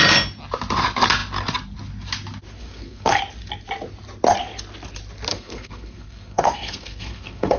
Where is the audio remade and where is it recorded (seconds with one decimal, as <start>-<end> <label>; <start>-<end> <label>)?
0.0-2.6 recorded; 2.6-3.2 remade; 3.2-5.3 recorded; 5.3-7.6 remade